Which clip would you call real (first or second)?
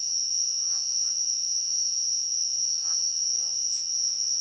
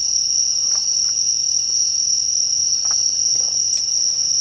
second